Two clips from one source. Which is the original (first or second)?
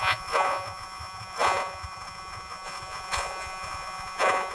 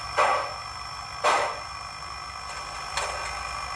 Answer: second